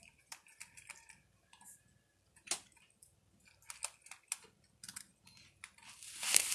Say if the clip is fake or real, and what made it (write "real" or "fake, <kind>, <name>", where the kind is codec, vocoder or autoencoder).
real